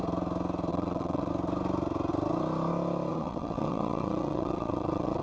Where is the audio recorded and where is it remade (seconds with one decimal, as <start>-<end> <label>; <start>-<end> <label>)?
0.0-0.7 recorded; 0.7-1.3 remade; 1.3-3.1 recorded; 3.1-5.2 remade